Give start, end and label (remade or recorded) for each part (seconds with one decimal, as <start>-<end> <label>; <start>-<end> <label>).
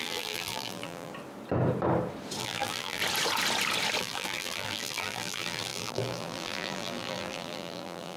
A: 0.0-1.1 remade; 1.1-2.4 recorded; 2.4-3.0 remade; 3.0-4.0 recorded; 4.0-8.2 remade